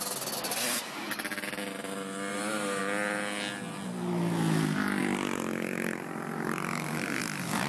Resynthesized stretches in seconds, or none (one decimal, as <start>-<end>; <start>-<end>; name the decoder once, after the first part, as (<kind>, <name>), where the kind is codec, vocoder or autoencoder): 2.3-2.8 (vocoder, BigVGAN v2); 5.0-7.2